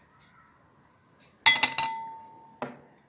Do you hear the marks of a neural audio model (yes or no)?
no